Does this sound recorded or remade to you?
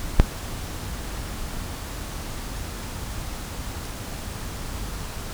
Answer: recorded